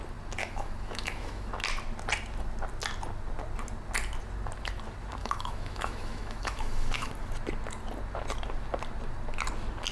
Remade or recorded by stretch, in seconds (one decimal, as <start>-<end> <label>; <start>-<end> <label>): 0.0-0.4 recorded; 0.4-1.5 remade; 1.5-5.2 recorded; 5.2-7.1 remade; 7.1-9.9 recorded